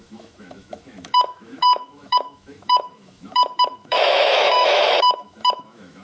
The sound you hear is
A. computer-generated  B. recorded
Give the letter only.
A